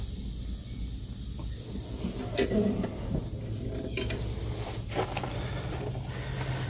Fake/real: real